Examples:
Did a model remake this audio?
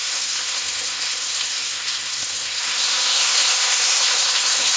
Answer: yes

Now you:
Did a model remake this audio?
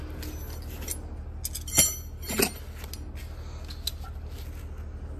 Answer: no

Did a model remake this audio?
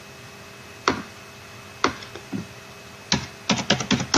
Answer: no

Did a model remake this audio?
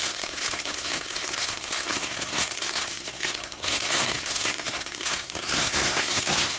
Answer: yes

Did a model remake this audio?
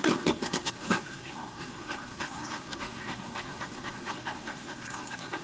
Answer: yes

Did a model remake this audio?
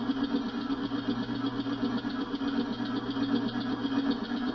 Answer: no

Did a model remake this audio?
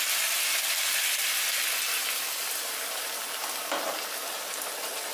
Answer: no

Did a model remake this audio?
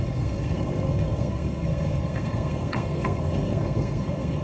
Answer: yes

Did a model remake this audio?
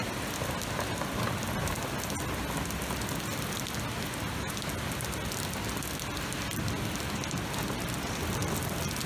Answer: no